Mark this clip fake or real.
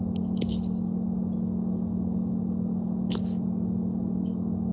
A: real